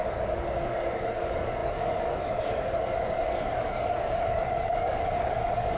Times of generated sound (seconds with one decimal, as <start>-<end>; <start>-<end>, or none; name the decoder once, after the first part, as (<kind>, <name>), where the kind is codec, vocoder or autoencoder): 0.0-5.8 (codec, DAC)